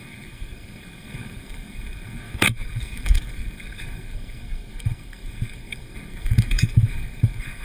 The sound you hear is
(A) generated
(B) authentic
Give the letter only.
A